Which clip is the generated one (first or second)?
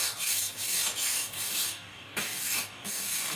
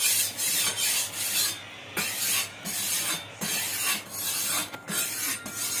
first